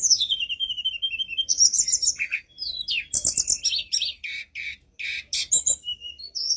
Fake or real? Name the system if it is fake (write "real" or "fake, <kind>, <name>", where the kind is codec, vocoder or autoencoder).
real